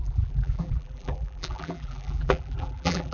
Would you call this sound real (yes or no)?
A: no